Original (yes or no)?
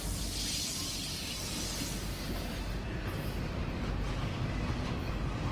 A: yes